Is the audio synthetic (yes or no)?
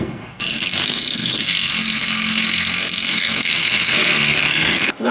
yes